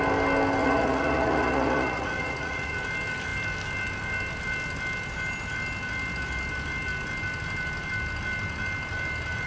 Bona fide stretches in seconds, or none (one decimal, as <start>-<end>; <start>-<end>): 0.0-0.6; 2.7-9.5